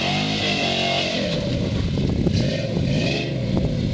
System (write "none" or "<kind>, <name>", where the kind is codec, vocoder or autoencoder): none